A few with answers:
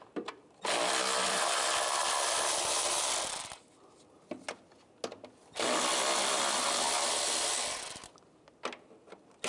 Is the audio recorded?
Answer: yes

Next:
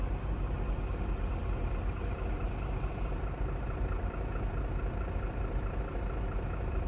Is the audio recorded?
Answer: yes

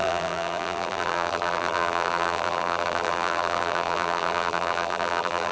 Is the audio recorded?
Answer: no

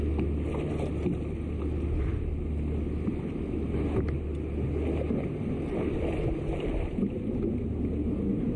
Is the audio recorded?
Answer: yes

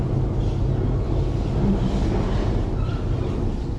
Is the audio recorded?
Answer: yes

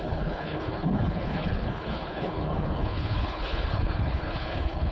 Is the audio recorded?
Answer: no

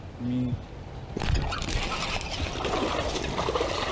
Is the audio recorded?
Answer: yes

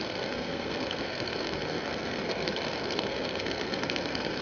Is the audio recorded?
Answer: no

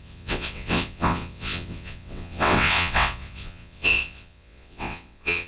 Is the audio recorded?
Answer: no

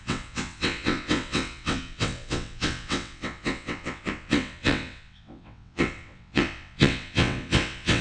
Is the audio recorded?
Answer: no